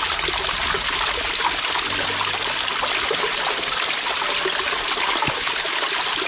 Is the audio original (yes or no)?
yes